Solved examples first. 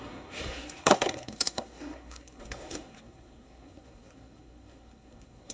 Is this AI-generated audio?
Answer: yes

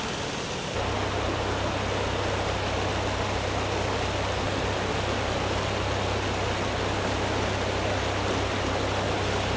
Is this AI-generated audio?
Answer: no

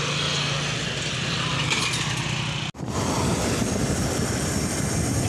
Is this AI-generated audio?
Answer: no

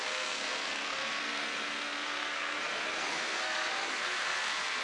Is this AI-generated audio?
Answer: yes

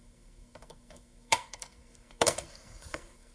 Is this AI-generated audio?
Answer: yes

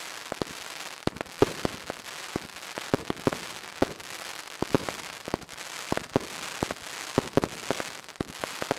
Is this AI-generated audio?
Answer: no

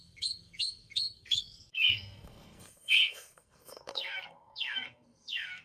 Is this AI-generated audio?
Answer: yes